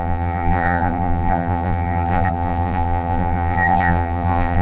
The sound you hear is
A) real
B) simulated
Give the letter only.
B